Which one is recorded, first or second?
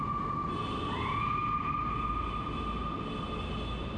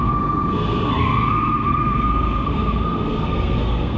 first